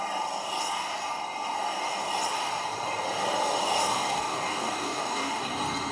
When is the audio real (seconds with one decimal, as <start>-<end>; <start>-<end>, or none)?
0.0-3.9; 5.5-5.9